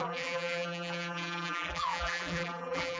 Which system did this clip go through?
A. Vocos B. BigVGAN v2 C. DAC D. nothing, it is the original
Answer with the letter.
B